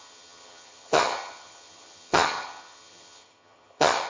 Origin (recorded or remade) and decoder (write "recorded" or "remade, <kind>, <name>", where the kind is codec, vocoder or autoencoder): remade, vocoder, HiFi-GAN